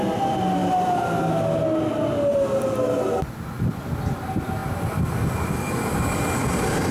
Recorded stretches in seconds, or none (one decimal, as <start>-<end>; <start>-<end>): 0.0-6.9